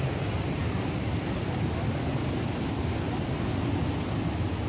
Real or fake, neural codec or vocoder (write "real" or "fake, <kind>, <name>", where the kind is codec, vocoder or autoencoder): real